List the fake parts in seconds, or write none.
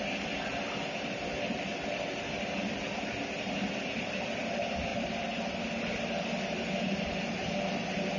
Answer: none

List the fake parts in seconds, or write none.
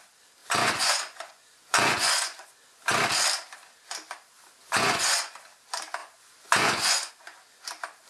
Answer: 0.4-2.8; 4.6-5.3; 6.0-7.1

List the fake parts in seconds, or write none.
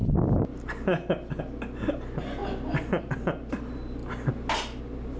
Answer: none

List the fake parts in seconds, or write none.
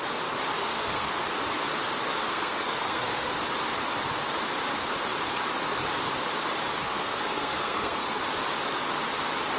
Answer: 0.6-1.2; 2.3-3.3; 6.8-8.2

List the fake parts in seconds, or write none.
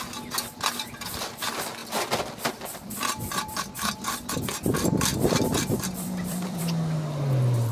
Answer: 5.1-6.6